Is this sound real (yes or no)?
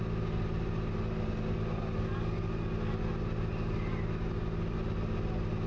yes